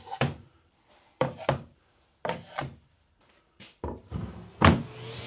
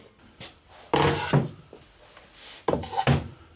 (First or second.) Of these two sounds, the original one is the second